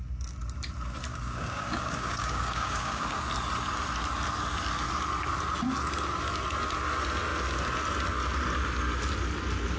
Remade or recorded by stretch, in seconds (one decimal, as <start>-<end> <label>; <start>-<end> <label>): 0.0-1.1 recorded; 1.1-3.2 remade; 3.2-9.8 recorded